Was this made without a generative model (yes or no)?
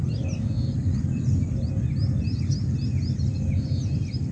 yes